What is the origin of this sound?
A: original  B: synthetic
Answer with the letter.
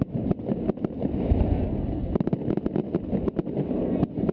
A